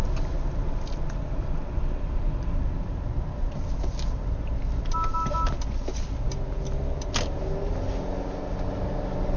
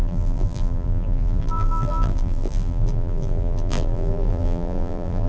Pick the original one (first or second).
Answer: first